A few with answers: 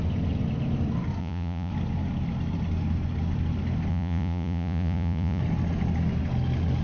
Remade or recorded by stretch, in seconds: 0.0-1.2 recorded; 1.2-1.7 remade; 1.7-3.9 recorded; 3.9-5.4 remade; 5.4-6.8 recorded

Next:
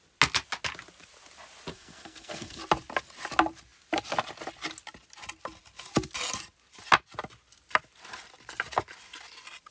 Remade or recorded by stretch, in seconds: 0.0-1.7 recorded; 1.7-2.6 remade; 2.6-9.7 recorded